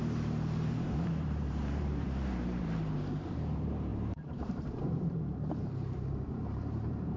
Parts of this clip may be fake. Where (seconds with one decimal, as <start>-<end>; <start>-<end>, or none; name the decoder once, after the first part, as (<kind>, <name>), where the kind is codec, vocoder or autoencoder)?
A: 0.0-7.2 (vocoder, BigVGAN v2)